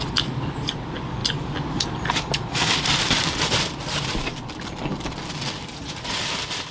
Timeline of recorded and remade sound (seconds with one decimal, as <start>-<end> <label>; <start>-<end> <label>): 0.0-5.7 recorded; 5.7-6.2 remade; 6.2-6.7 recorded